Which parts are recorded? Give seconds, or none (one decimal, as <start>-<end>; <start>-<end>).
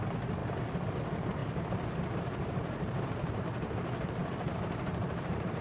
0.0-1.4; 3.4-4.2